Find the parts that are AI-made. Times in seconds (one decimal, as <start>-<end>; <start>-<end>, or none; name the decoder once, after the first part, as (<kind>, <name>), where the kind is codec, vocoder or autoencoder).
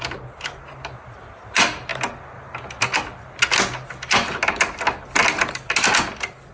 none